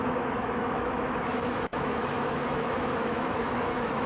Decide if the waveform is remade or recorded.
remade